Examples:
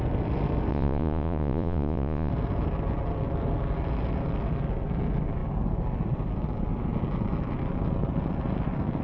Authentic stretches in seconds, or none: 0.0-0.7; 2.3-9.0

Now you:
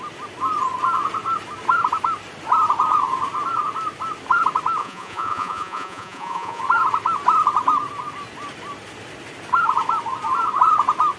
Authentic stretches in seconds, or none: 0.0-4.8; 6.6-11.2

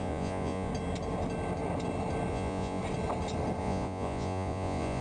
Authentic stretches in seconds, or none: 0.7-2.3; 2.8-3.6

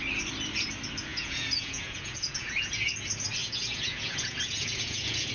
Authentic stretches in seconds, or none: 0.0-1.1; 2.9-3.4